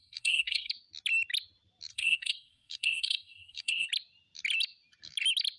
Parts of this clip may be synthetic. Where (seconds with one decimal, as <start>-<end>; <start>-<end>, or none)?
0.0-0.7; 1.9-3.9